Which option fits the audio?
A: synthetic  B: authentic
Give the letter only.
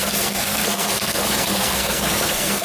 A